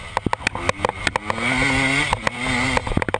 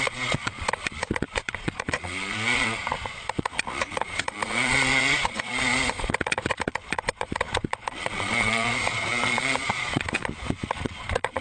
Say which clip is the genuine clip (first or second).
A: first